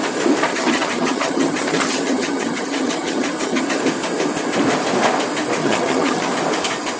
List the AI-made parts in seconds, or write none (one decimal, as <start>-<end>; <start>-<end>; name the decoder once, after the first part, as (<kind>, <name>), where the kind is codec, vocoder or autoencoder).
0.5-3.6 (vocoder, HiFi-GAN); 5.6-6.3